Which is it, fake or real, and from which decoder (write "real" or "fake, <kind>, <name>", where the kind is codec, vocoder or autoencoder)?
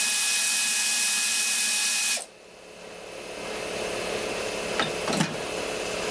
real